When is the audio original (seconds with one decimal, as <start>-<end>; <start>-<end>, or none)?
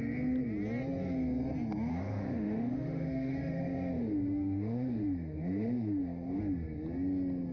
0.0-1.9; 6.4-7.5